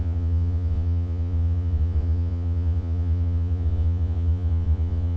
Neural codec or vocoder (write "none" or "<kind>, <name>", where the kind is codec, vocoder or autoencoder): vocoder, Vocos